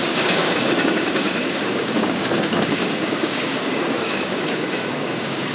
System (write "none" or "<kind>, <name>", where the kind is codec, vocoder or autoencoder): codec, DAC